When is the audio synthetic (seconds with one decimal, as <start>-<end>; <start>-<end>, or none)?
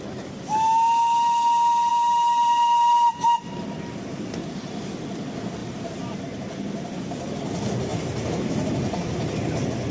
1.9-2.9; 5.6-6.2; 7.9-8.5